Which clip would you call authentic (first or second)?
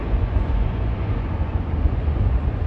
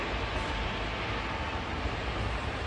second